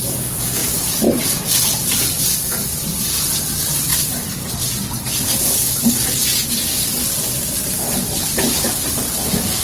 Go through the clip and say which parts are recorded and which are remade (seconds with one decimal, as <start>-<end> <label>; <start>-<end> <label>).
0.0-9.6 recorded